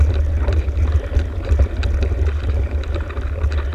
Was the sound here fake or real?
real